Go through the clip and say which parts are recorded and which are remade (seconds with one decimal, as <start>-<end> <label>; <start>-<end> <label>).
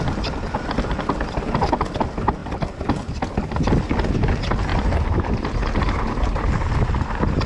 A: 0.0-4.7 recorded; 4.7-6.5 remade; 6.5-7.5 recorded